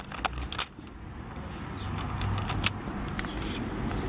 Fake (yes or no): no